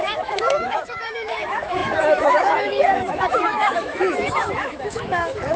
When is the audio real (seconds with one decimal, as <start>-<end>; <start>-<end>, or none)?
none